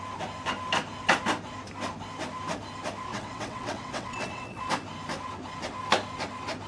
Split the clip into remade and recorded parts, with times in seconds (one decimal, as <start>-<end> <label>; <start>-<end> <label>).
0.0-3.1 recorded; 3.1-4.6 remade; 4.6-6.7 recorded